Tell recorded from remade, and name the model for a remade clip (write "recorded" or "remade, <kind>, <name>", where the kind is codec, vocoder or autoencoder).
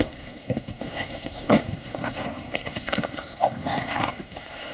remade, codec, SNAC